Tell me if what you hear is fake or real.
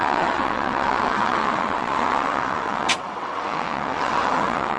fake